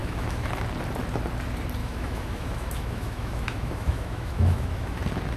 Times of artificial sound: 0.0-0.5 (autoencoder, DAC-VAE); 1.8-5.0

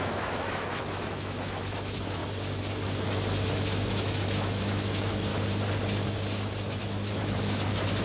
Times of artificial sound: 0.0-2.2 (autoencoder, DAC-VAE); 3.9-5.3; 6.8-8.0

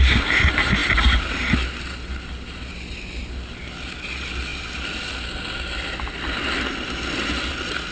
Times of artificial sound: none

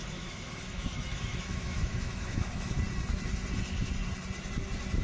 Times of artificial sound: 0.0-2.7 (autoencoder, DAC-VAE)

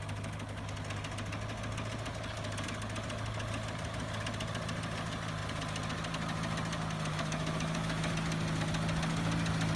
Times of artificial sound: 7.1-8.1 (autoencoder, DAC-VAE)